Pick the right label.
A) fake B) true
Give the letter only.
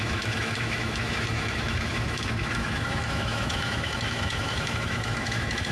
A